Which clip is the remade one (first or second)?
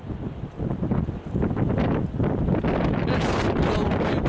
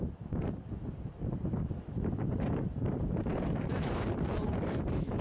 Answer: second